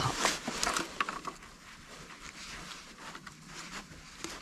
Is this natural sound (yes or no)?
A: yes